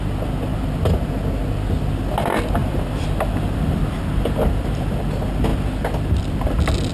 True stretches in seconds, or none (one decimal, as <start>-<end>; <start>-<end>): 0.0-2.6; 5.0-6.9